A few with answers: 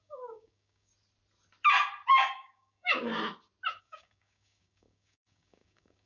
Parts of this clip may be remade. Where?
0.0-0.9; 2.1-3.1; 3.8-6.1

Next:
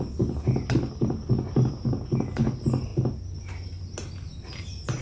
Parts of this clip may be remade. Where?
none

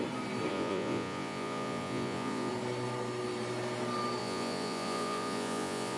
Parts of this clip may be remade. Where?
0.5-2.5; 4.2-6.0

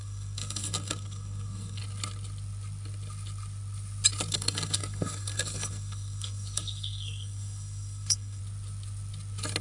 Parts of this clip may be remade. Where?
0.0-1.8; 4.3-8.4

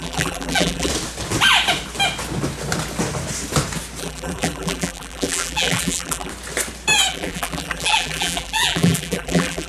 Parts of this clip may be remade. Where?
0.0-0.9; 4.0-6.3; 7.1-9.7

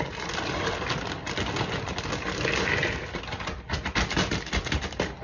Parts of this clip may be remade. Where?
none